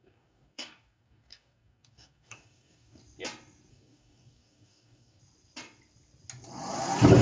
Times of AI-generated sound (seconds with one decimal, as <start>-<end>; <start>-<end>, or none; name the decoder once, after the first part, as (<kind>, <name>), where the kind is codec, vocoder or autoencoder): 0.0-3.0 (codec, DAC); 3.7-5.2